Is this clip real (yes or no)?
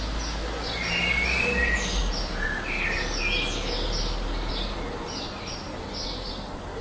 yes